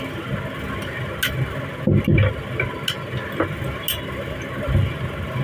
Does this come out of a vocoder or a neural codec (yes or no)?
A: no